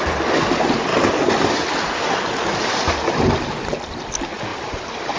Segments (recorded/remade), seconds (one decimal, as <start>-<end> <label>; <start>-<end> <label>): 0.0-5.2 recorded